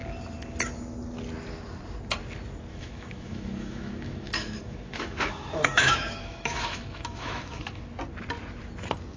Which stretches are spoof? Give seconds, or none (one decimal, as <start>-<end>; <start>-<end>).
2.7-7.8